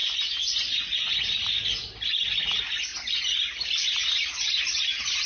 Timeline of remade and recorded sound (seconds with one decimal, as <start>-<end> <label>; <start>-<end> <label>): 0.0-5.3 recorded